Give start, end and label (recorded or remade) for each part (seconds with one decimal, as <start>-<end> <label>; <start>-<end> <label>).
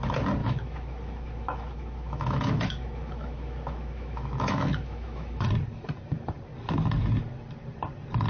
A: 0.0-0.4 recorded; 0.4-5.4 remade; 5.4-8.3 recorded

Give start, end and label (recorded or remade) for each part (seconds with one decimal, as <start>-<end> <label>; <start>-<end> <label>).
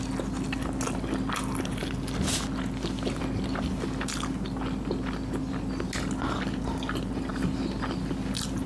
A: 0.0-8.7 recorded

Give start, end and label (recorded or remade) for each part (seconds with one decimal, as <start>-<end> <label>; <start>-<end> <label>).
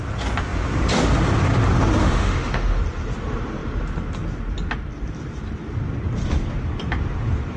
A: 0.0-2.0 recorded; 2.0-2.8 remade; 2.8-7.6 recorded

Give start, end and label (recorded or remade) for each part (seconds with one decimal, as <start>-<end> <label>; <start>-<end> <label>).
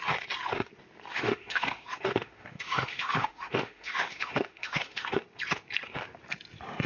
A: 0.0-1.1 recorded; 1.1-5.2 remade; 5.2-6.9 recorded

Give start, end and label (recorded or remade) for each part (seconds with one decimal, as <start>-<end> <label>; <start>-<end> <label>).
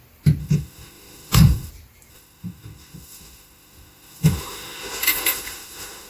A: 0.0-0.4 recorded; 0.4-1.7 remade; 1.7-2.1 recorded; 2.1-6.1 remade